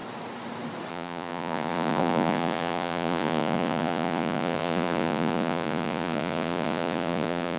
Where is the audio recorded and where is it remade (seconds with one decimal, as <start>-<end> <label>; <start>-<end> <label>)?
0.0-0.9 recorded; 0.9-7.6 remade